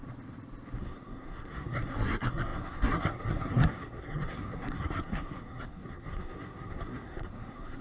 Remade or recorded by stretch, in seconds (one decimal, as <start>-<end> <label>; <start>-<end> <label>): 0.0-0.8 recorded; 0.8-7.8 remade

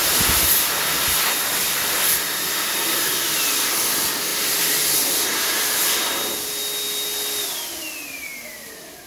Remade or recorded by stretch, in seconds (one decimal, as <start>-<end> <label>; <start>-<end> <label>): 0.0-0.8 remade; 0.8-4.3 recorded; 4.3-5.7 remade; 5.7-9.1 recorded

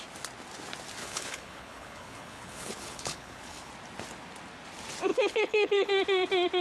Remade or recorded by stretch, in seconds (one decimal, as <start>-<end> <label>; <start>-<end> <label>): 0.0-1.0 recorded; 1.0-3.7 remade; 3.7-5.1 recorded; 5.1-5.9 remade; 5.9-6.6 recorded